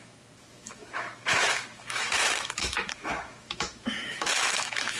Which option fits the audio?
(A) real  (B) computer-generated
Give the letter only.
B